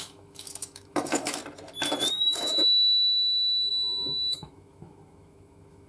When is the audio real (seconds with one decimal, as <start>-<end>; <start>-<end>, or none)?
1.4-2.1